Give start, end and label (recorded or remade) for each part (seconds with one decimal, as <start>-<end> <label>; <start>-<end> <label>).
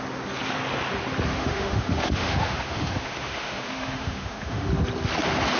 0.0-1.3 recorded; 1.3-4.7 remade; 4.7-5.6 recorded